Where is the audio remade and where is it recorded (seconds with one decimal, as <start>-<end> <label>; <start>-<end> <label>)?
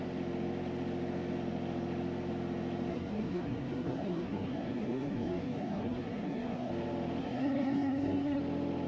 0.0-2.9 recorded; 2.9-6.7 remade; 6.7-7.2 recorded; 7.2-8.4 remade; 8.4-8.9 recorded